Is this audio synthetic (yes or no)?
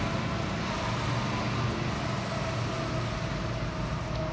no